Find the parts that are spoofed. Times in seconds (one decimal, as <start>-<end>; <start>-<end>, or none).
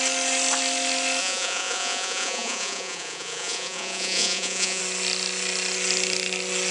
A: 1.2-4.8